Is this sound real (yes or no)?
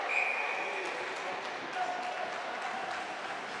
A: yes